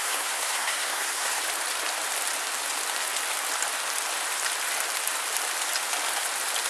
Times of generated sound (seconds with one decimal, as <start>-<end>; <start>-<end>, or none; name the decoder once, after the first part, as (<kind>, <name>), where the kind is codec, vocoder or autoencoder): 0.0-1.4 (codec, SNAC)